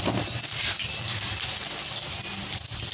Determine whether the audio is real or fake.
real